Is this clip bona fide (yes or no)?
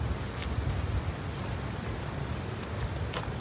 yes